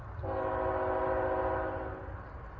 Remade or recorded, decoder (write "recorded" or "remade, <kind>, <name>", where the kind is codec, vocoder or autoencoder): recorded